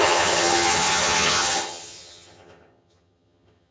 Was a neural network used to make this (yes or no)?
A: yes